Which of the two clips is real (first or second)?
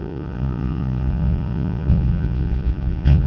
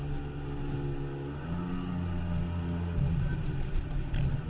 second